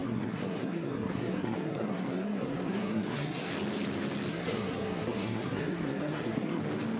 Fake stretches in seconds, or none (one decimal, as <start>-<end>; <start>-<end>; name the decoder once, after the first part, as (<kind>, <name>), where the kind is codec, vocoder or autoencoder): 0.0-3.5 (codec, SNAC); 4.3-6.6